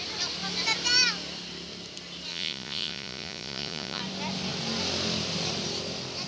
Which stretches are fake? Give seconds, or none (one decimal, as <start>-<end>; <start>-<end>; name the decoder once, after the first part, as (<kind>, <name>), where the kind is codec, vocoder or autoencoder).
2.3-4.0 (vocoder, Vocos)